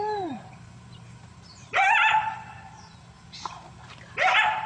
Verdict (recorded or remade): remade